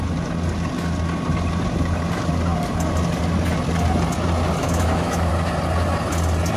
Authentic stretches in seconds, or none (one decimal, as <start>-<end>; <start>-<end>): 0.0-4.6; 5.3-6.6